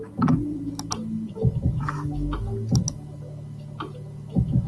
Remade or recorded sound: recorded